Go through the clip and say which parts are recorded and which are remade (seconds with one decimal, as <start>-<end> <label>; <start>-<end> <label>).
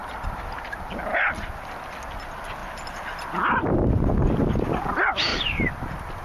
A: 0.0-0.9 remade; 0.9-5.3 recorded; 5.3-6.2 remade